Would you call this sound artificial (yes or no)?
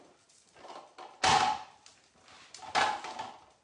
no